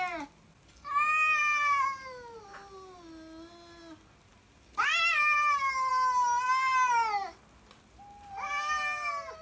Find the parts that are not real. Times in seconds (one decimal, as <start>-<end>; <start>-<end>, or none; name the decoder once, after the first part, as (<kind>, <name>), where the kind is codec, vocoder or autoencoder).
none